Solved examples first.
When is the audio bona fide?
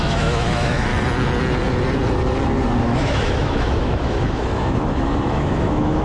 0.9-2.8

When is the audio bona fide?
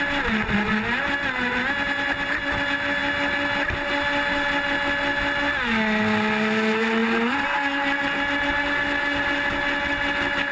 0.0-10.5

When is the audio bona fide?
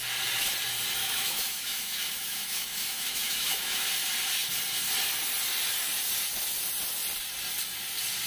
0.0-1.0; 3.9-8.3